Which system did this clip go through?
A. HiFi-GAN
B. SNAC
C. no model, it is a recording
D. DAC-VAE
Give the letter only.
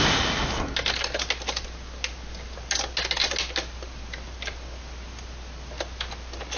C